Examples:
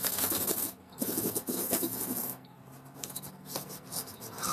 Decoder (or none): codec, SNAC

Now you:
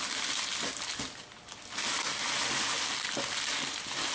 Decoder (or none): none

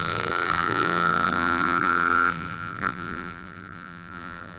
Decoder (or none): vocoder, BigVGAN v2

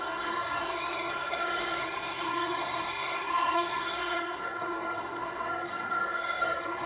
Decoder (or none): codec, SNAC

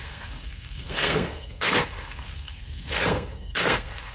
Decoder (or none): codec, SNAC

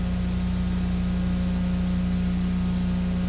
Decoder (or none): none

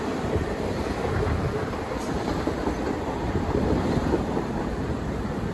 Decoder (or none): vocoder, BigVGAN v2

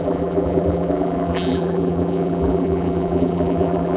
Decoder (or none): vocoder, BigVGAN v2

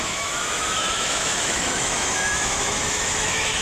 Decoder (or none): autoencoder, DAC-VAE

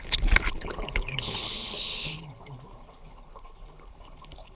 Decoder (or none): codec, HILCodec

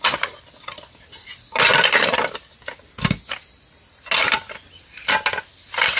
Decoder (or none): none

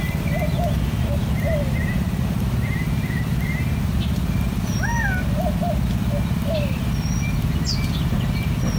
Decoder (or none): none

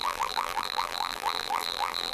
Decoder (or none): vocoder, BigVGAN v2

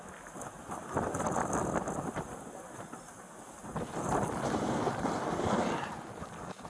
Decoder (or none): none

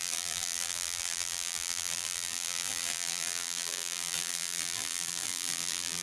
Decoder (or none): vocoder, BigVGAN v2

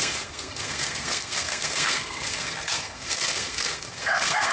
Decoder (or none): codec, SNAC